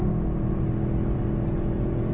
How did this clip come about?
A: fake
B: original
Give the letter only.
B